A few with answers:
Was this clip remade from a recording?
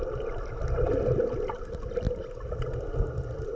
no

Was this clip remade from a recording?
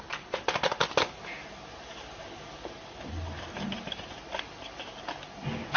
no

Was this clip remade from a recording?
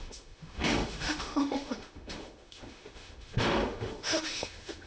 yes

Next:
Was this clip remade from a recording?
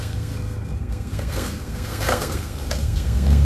yes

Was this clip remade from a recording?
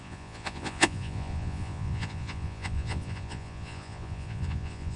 yes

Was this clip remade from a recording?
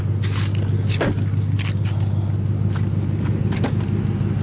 no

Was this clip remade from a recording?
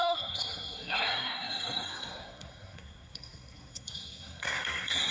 yes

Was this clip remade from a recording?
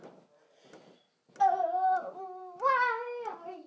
no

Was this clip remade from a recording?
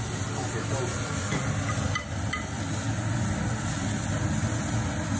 no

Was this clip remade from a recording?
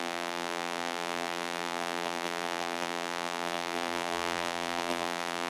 yes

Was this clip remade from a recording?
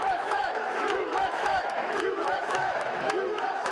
yes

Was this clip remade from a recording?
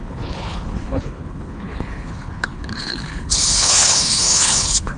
yes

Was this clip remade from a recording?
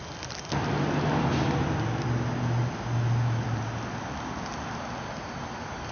no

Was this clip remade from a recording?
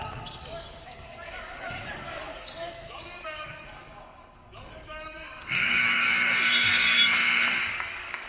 yes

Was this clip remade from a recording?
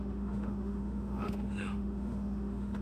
yes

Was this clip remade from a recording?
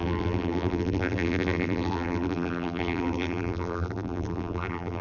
yes